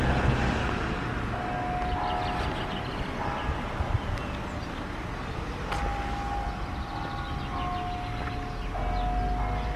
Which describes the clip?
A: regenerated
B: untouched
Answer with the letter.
B